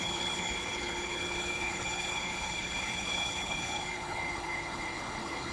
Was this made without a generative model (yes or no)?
no